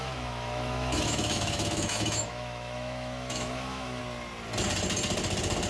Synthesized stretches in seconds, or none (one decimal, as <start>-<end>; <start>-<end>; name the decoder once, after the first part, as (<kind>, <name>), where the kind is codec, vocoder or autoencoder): 0.0-4.0 (autoencoder, DAC-VAE)